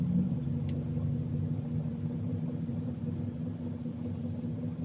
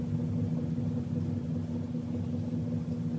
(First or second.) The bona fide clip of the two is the second